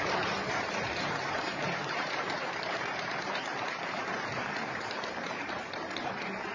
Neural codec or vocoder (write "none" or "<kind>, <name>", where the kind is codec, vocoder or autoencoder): vocoder, BigVGAN v2